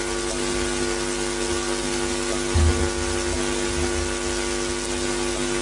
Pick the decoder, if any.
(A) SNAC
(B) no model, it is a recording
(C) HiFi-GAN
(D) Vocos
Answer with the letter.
B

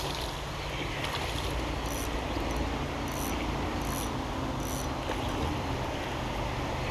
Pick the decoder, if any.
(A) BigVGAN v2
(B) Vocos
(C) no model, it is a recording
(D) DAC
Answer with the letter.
C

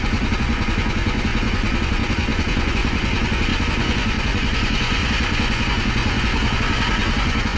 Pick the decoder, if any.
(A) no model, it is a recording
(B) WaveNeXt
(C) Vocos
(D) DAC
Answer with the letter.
C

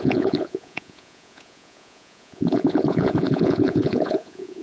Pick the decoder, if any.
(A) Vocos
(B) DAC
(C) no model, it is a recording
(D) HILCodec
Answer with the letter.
A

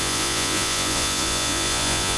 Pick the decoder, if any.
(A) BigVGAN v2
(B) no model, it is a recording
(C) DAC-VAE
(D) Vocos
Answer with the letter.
D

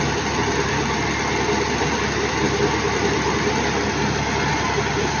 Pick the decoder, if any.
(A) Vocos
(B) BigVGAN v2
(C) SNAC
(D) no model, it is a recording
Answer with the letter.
D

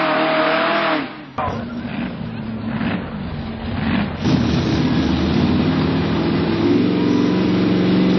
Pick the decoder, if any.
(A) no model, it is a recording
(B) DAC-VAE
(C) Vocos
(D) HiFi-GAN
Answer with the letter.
A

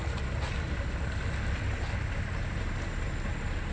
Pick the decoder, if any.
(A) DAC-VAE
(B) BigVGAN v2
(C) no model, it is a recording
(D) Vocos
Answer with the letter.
C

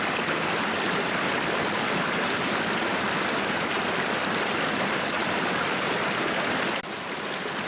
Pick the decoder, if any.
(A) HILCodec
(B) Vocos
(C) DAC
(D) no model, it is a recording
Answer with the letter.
D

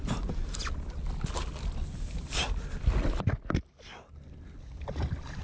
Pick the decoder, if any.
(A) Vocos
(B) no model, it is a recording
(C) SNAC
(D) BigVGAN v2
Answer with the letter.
B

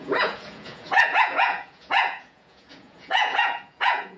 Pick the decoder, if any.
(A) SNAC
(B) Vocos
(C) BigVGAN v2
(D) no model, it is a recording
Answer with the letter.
B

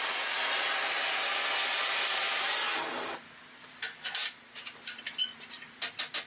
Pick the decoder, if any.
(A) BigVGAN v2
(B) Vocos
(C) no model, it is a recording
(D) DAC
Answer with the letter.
C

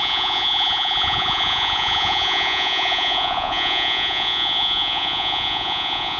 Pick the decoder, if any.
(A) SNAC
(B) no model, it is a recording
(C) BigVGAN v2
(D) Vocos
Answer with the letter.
D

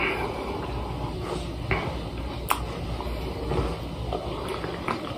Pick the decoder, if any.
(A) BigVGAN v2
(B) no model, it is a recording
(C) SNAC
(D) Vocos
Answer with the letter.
B